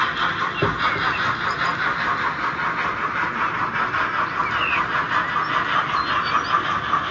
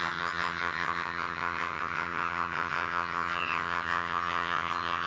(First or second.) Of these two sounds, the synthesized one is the second